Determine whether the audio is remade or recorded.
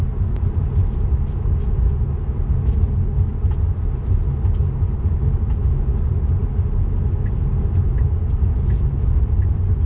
recorded